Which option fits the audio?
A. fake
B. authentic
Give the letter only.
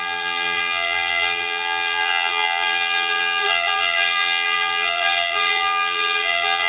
A